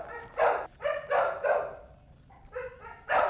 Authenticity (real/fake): real